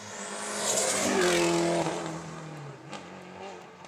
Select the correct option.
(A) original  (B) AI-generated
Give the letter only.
A